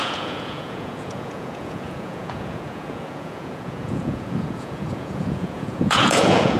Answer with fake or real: fake